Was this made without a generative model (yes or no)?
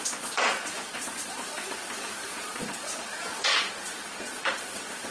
no